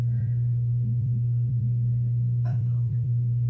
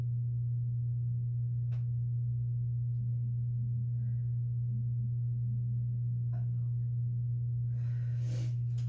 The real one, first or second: second